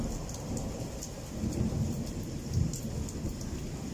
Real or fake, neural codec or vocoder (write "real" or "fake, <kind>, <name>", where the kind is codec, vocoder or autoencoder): real